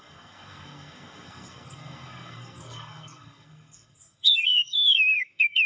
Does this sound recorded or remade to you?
remade